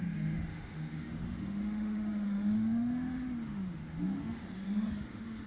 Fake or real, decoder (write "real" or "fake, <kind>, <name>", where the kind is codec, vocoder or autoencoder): fake, autoencoder, DAC-VAE